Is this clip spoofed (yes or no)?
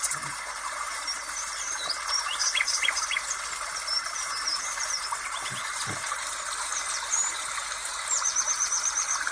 yes